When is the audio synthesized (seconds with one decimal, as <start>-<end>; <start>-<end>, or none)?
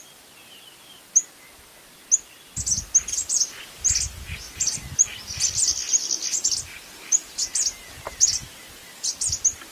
none